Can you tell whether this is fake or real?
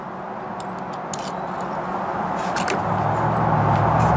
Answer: real